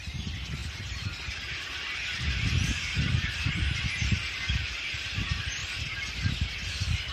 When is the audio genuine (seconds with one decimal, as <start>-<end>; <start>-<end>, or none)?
0.0-7.1